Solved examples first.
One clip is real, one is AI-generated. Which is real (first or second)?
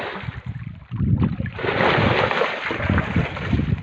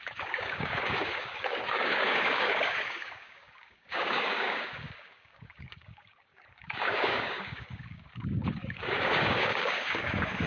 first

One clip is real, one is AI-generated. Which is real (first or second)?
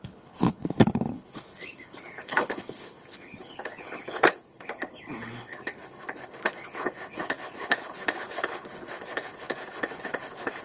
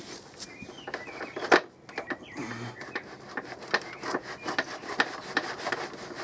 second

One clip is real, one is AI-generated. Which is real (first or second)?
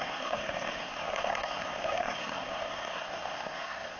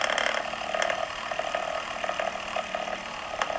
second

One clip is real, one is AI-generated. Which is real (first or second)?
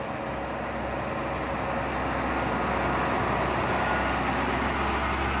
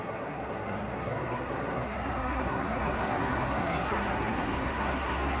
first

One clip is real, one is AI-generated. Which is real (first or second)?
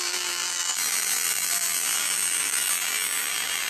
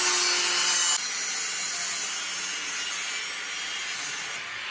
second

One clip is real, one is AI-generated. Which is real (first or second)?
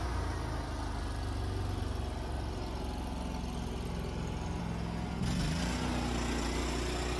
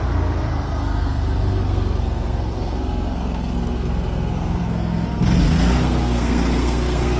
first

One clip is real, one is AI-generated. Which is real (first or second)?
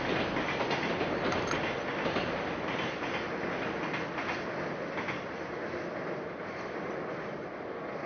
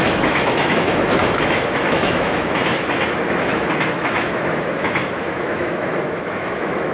first